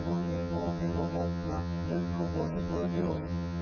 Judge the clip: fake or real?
fake